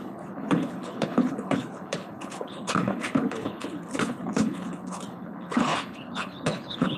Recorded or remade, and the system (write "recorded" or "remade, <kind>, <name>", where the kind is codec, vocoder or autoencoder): remade, codec, HILCodec